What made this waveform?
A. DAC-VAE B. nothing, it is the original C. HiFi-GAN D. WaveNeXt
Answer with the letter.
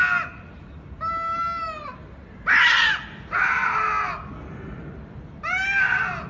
B